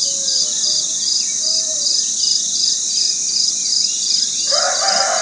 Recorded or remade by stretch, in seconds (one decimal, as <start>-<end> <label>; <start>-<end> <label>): 0.0-5.2 recorded